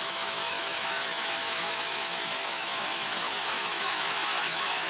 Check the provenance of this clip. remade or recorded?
remade